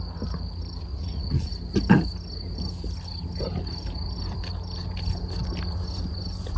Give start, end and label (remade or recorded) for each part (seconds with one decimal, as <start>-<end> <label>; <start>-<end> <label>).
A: 0.0-0.9 recorded; 0.9-1.5 remade; 1.5-6.6 recorded